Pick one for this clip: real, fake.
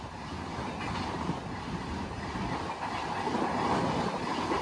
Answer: real